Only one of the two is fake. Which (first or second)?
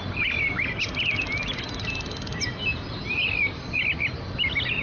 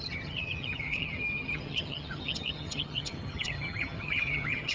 second